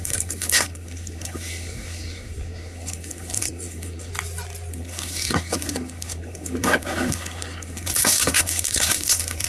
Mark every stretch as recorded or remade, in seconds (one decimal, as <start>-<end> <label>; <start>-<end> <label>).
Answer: 0.0-4.1 remade; 4.1-4.7 recorded; 4.7-9.5 remade